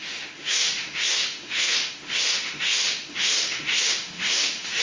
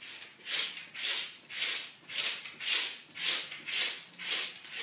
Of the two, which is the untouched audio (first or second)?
second